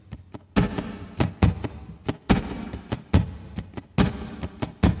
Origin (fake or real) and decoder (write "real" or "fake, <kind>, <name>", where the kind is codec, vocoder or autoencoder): real